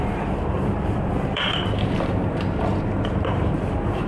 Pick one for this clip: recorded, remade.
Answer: remade